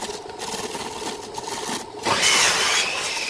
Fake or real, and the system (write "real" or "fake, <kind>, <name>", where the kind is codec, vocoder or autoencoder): real